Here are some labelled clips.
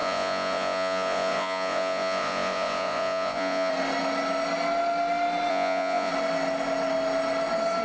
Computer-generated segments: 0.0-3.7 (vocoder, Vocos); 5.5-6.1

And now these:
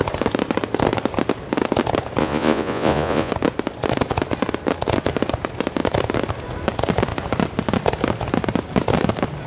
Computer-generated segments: 2.2-3.3 (vocoder, Vocos)

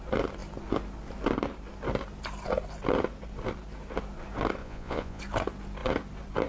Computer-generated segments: 4.6-5.2 (vocoder, Vocos)

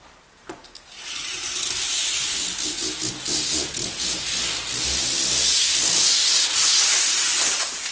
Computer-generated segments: none

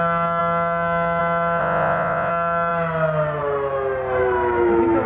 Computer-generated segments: 1.6-2.3 (vocoder, Vocos)

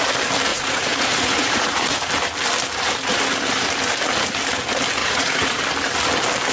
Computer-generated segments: 0.5-2.1 (vocoder, Vocos); 5.0-5.6

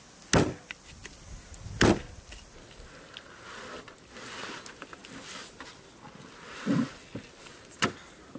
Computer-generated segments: none

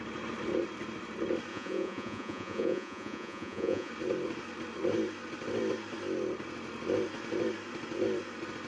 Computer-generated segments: 1.5-3.9 (vocoder, Vocos)